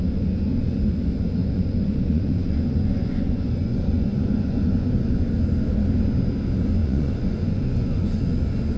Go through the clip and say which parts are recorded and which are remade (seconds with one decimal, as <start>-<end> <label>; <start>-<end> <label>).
0.0-1.4 recorded; 1.4-4.9 remade; 4.9-6.8 recorded; 6.8-8.2 remade; 8.2-8.8 recorded

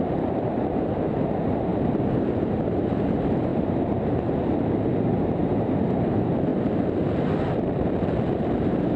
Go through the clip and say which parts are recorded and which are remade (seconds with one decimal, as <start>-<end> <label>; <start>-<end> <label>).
0.0-1.7 remade; 1.7-2.3 recorded; 2.3-6.5 remade; 6.5-8.3 recorded; 8.3-9.0 remade

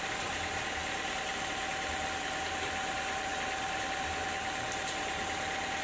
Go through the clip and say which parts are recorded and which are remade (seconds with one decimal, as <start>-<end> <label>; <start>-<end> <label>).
0.0-5.8 recorded

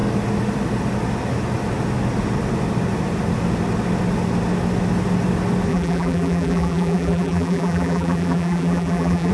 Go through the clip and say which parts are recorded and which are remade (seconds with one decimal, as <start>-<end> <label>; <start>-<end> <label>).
0.0-5.7 recorded; 5.7-9.3 remade

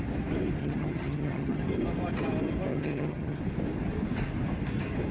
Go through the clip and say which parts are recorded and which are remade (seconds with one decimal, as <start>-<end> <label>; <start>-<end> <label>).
0.0-0.6 recorded; 0.6-1.6 remade; 1.6-2.7 recorded; 2.7-3.4 remade; 3.4-5.1 recorded

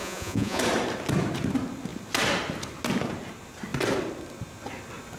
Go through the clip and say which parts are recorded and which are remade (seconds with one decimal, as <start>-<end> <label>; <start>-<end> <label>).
0.0-0.6 remade; 0.6-5.2 recorded

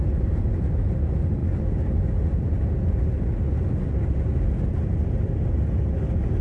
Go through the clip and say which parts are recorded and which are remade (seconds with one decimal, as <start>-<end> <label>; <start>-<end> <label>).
0.0-6.4 recorded